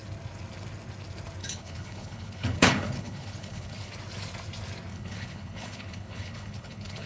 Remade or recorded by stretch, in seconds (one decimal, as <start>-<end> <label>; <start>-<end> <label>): 0.0-1.4 recorded; 1.4-3.9 remade; 3.9-4.9 recorded; 4.9-7.1 remade